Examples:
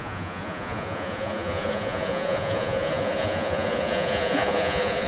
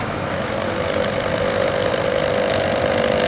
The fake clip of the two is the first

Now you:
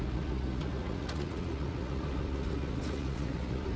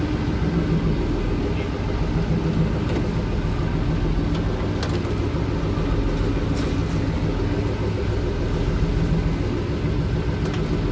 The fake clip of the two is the first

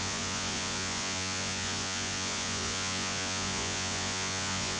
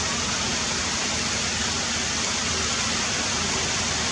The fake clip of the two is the first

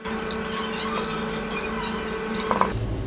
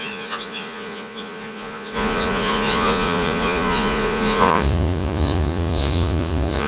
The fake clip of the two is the second